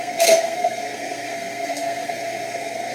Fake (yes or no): yes